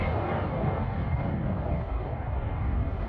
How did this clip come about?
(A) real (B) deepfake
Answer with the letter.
B